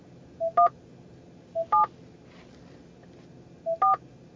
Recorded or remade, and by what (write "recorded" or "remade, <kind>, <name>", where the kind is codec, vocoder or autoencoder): recorded